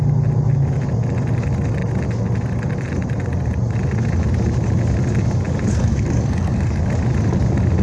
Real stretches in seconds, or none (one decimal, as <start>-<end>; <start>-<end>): 0.0-5.7; 6.8-7.8